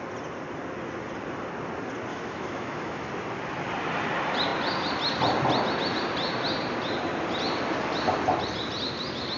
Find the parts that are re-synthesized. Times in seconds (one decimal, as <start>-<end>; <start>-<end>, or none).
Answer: 2.1-3.1